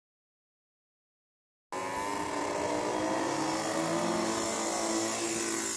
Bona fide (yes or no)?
yes